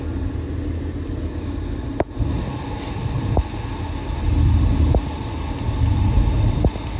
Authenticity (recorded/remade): recorded